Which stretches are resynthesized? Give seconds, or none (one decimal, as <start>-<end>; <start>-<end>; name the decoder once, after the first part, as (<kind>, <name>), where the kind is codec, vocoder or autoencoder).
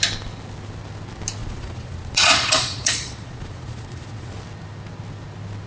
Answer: 1.4-4.3 (vocoder, Vocos)